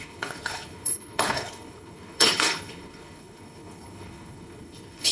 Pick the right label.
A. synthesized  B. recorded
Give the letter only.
A